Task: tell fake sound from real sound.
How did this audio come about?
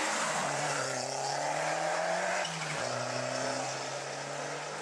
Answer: real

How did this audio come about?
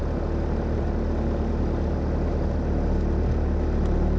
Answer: real